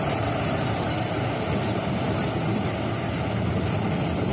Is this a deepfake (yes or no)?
yes